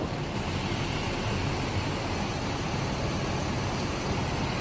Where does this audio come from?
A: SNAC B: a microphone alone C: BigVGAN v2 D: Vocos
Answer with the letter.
B